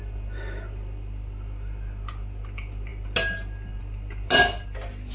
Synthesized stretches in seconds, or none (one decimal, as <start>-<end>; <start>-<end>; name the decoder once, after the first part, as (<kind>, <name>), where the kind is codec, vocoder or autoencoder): none